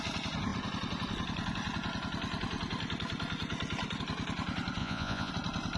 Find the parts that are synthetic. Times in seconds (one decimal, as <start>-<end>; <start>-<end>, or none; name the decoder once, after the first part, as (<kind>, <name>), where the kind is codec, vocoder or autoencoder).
4.8-5.3 (vocoder, Vocos)